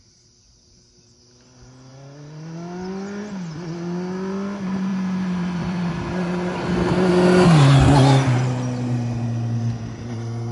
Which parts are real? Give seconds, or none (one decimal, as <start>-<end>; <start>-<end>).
0.0-4.9; 6.6-10.5